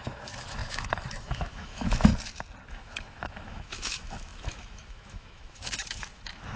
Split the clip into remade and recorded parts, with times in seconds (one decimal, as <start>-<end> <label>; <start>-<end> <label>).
0.0-2.1 remade; 2.1-2.7 recorded; 2.7-6.6 remade